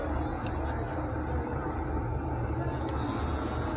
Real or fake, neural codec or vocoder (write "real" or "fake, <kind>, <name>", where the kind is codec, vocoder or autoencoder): real